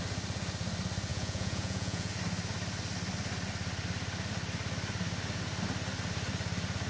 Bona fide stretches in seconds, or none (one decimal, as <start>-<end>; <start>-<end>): 0.0-1.1; 2.1-6.9